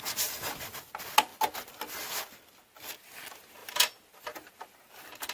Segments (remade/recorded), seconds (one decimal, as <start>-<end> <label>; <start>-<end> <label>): 0.0-3.6 recorded; 3.6-4.2 remade; 4.2-5.3 recorded